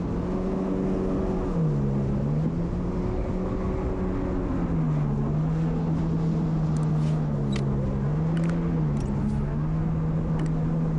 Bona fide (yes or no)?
yes